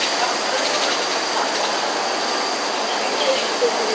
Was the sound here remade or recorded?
recorded